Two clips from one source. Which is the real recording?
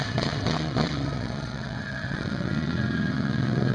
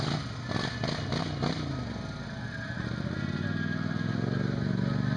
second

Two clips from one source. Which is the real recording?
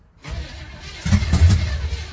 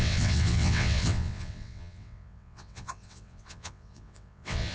first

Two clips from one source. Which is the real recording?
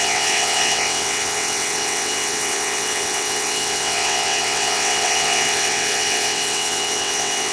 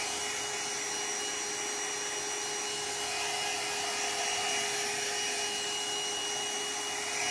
second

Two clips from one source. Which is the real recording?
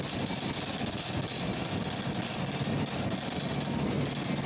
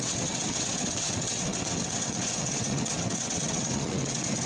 first